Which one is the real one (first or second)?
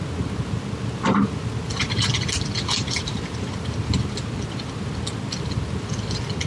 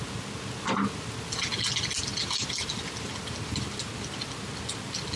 second